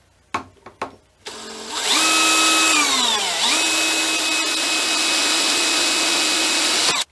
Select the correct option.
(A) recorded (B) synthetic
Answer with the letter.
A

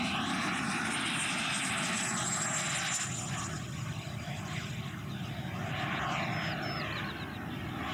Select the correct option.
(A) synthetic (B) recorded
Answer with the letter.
B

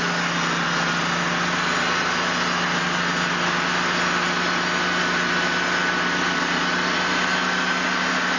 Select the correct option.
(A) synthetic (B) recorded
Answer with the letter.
B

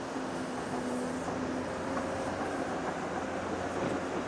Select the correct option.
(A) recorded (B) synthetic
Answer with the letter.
A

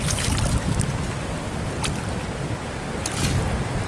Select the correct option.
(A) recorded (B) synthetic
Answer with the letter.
A